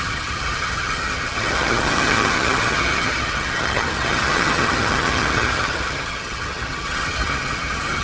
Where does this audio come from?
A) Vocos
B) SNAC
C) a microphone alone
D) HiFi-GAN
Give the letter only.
D